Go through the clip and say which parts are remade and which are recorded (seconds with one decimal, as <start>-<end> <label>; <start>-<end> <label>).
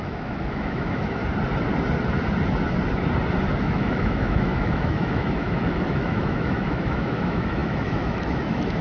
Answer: 0.0-1.2 remade; 1.2-3.6 recorded; 3.6-8.8 remade